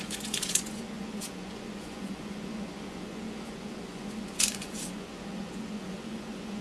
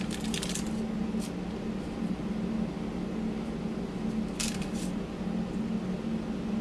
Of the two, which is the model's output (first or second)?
first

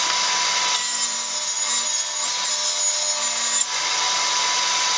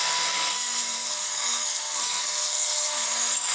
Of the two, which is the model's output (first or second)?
second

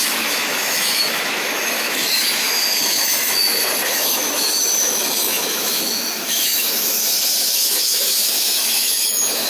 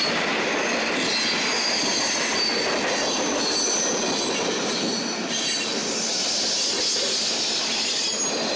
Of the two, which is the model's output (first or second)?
first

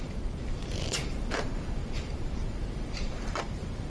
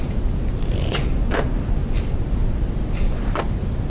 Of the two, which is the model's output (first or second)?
first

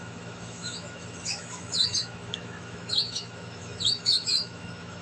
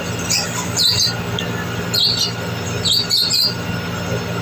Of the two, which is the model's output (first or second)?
first